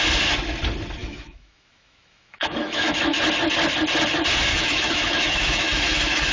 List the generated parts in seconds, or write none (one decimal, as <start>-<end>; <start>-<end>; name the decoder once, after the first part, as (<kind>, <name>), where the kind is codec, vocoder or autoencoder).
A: 1.0-3.2 (autoencoder, DAC-VAE); 4.5-6.3